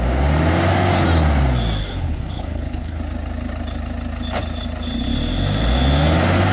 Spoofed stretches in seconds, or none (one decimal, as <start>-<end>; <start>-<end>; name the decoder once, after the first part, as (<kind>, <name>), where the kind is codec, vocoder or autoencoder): 1.8-3.0 (codec, HILCodec)